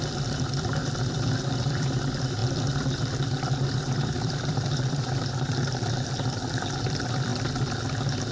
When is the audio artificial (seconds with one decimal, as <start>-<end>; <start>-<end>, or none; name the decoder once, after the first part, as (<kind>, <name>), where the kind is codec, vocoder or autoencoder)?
0.0-7.3 (vocoder, BigVGAN v2); 7.9-8.3

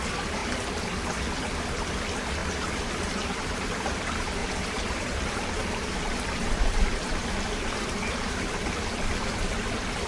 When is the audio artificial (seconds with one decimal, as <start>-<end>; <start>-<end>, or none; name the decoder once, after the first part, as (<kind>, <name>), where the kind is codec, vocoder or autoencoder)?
2.4-3.9 (vocoder, BigVGAN v2); 4.4-8.7

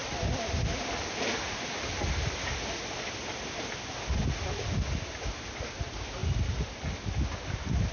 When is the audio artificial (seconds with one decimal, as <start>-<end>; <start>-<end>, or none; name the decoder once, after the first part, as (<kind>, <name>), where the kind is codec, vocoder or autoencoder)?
none